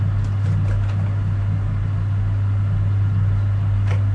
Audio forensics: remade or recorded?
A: recorded